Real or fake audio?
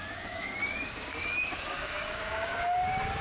fake